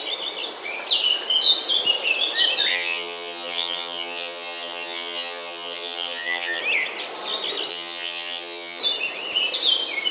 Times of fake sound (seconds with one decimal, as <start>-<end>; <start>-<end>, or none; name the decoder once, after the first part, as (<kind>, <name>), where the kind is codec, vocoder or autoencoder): 2.7-6.6 (vocoder, HiFi-GAN); 7.7-8.8